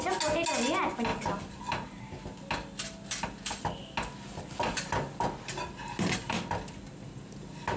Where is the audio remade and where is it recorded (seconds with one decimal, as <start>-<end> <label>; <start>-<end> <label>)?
0.0-7.8 recorded